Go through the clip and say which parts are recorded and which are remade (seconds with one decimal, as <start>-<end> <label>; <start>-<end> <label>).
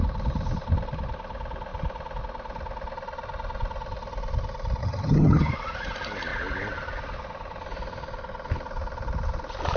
0.0-4.8 recorded; 4.8-5.5 remade; 5.5-9.8 recorded